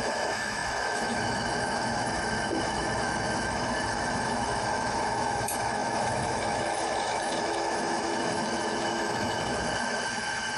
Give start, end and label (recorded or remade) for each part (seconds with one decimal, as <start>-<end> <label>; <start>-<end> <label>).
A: 0.0-10.6 remade